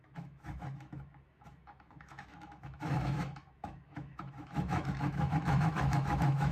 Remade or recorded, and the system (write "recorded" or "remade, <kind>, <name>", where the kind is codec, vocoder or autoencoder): remade, autoencoder, DAC-VAE